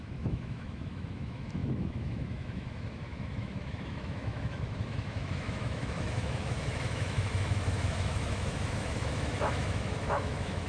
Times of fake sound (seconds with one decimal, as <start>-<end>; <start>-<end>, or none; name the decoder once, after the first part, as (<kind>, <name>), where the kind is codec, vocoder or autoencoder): 0.0-10.7 (autoencoder, DAC-VAE)